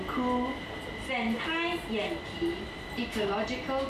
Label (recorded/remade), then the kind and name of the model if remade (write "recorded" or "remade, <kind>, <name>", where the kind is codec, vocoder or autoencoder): recorded